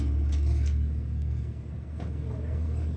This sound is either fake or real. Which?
fake